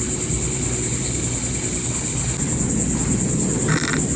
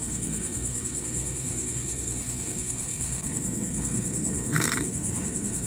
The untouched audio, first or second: first